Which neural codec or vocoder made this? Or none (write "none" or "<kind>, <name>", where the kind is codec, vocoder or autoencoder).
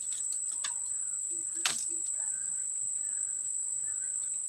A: none